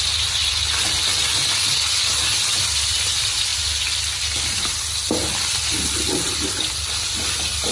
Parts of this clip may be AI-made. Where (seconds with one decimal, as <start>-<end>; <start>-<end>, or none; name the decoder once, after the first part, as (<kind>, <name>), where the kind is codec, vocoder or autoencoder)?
none